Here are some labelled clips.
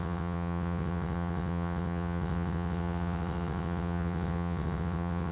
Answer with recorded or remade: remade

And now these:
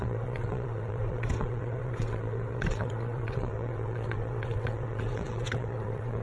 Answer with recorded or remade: remade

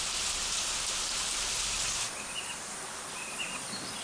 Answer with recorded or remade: recorded